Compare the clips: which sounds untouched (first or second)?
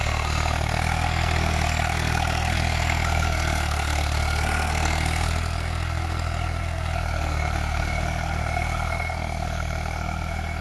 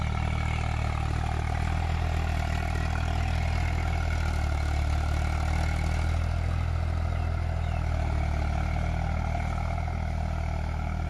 second